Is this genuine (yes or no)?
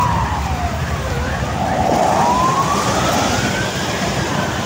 no